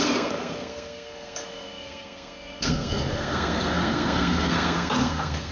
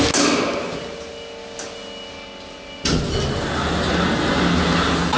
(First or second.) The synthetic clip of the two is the first